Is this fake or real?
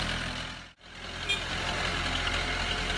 real